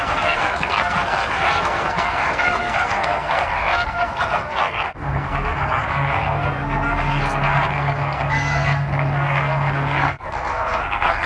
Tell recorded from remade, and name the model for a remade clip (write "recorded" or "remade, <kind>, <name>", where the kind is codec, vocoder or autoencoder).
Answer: remade, codec, SNAC